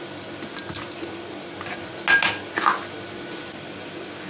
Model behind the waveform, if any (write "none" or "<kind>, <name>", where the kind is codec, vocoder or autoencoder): none